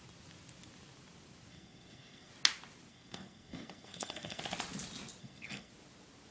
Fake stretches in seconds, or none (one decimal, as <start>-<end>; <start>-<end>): 1.5-2.3; 2.9-4.4; 5.2-5.7